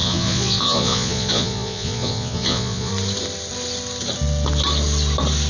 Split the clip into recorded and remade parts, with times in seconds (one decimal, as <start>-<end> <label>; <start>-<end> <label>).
0.0-2.9 remade; 2.9-5.5 recorded